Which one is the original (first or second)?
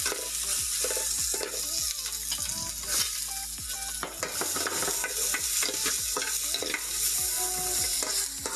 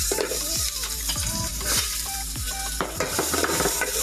first